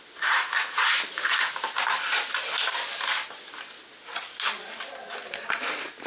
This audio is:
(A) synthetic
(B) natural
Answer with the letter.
B